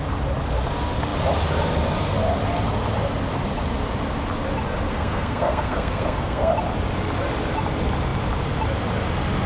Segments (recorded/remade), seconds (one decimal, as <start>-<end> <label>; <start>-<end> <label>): 0.0-4.9 recorded; 4.9-6.5 remade; 6.5-9.5 recorded